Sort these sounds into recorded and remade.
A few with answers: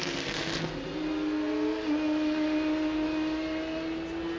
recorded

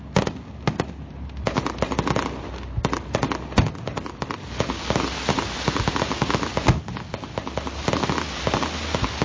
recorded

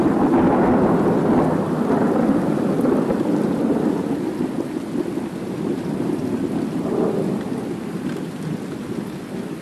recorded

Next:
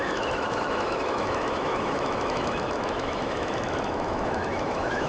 remade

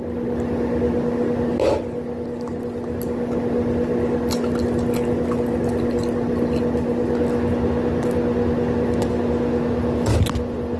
recorded